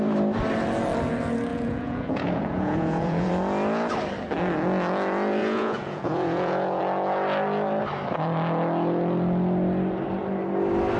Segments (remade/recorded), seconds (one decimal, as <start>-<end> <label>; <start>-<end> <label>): 0.0-1.5 recorded; 1.5-3.3 remade; 3.3-5.4 recorded; 5.4-6.8 remade; 6.8-11.0 recorded